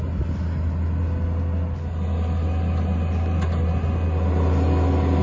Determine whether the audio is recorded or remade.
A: recorded